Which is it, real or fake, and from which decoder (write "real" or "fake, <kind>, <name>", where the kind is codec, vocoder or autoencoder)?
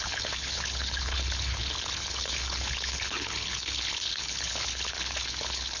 fake, codec, HILCodec